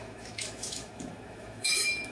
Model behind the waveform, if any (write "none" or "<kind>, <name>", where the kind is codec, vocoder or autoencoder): autoencoder, DAC-VAE